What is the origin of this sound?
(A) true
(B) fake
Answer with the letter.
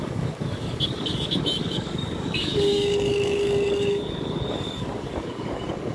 B